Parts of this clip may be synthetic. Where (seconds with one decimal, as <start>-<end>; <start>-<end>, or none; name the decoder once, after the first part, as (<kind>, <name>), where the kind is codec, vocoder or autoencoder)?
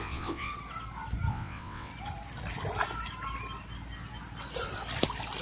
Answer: 0.0-0.5 (vocoder, WaveNeXt); 1.3-1.9